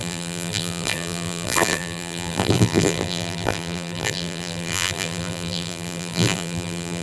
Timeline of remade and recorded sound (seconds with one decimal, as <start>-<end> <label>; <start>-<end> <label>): 0.0-7.0 remade